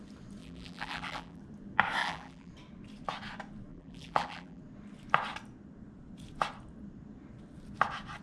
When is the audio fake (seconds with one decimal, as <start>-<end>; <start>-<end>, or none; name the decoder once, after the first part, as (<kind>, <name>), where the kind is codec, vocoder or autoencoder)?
0.4-1.4 (vocoder, BigVGAN v2); 2.0-2.5; 3.7-4.6